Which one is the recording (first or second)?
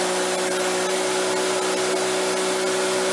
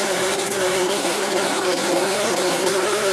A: first